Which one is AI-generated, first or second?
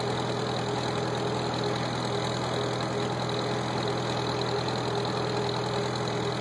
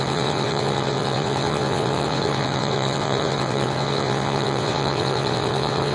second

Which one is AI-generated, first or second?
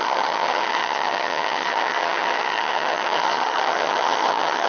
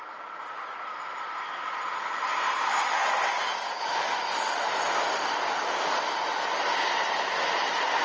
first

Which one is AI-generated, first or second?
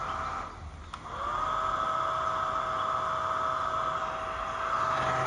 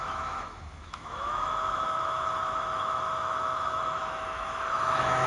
second